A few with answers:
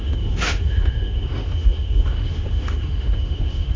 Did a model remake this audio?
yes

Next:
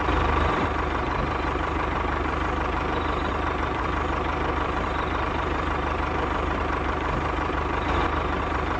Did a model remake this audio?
yes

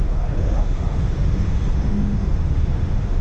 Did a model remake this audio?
yes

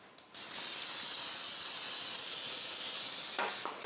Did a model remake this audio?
no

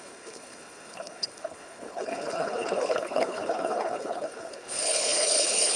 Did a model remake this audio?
yes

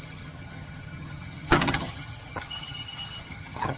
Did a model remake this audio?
yes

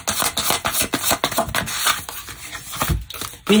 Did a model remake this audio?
no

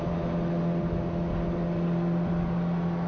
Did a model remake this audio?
no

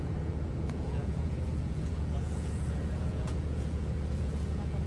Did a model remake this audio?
yes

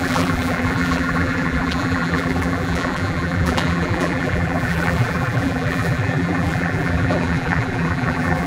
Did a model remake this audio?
yes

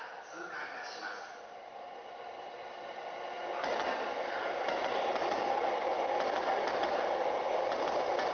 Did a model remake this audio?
no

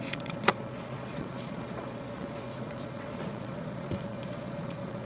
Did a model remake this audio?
yes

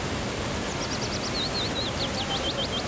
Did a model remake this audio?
no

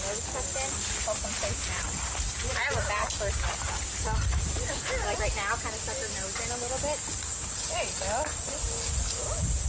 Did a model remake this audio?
no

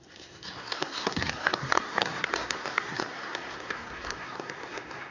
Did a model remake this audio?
yes